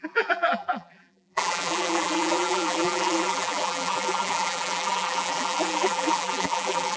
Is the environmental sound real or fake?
fake